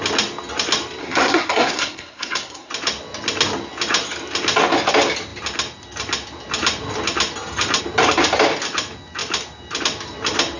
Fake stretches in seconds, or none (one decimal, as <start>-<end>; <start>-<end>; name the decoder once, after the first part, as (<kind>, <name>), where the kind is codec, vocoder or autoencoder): 1.0-2.7 (codec, SNAC)